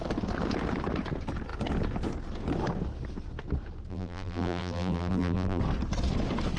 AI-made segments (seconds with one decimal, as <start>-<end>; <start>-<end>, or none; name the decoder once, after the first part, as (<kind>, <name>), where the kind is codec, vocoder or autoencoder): 3.9-5.6 (vocoder, BigVGAN v2)